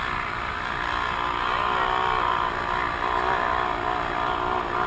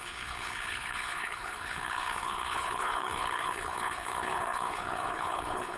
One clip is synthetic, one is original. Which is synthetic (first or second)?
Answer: second